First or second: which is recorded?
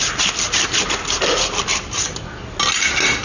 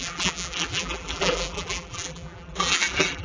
first